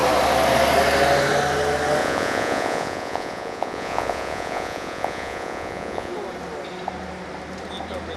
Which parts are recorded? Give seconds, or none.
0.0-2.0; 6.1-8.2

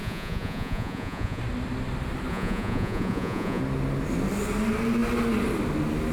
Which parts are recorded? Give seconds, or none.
1.4-2.3; 3.6-6.1

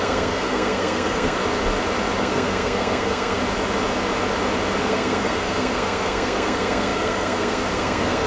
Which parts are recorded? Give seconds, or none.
1.4-2.2; 3.4-4.8

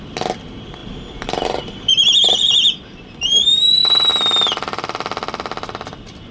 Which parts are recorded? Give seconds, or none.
0.0-0.8; 4.1-6.3

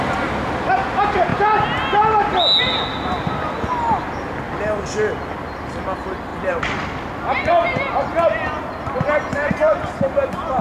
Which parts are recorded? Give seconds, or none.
0.0-6.3